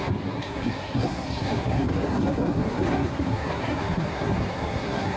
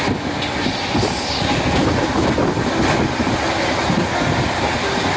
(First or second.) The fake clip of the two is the first